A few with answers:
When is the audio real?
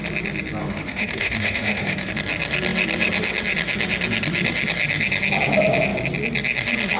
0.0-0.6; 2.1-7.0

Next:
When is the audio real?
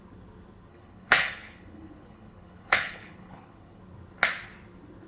0.0-0.7; 3.8-5.1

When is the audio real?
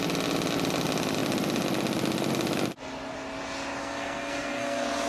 0.0-3.8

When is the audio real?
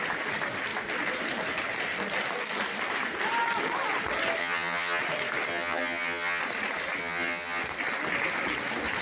0.0-4.4; 5.0-5.5; 6.4-7.0; 7.6-9.0